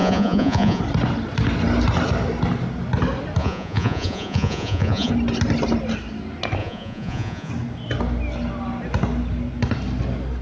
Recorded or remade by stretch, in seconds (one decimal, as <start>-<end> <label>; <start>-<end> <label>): 0.0-0.8 remade; 0.8-3.4 recorded; 3.4-5.1 remade; 5.1-6.6 recorded; 6.6-7.5 remade; 7.5-10.4 recorded